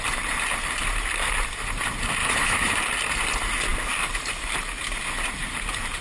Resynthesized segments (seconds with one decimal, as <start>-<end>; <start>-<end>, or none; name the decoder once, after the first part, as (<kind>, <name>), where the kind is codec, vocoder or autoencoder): 2.2-2.8 (autoencoder, DAC-VAE)